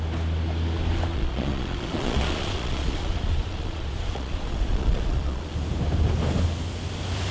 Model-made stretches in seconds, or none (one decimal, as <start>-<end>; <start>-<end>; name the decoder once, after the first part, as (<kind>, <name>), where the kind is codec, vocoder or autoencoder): 1.1-5.5 (vocoder, Vocos)